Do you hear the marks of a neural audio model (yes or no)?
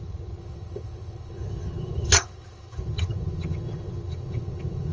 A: yes